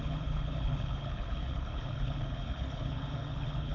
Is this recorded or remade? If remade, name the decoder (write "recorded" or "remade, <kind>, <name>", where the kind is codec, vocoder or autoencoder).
remade, codec, HILCodec